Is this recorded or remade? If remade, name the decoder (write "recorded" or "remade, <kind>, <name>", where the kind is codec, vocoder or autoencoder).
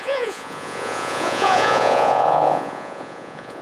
remade, vocoder, Vocos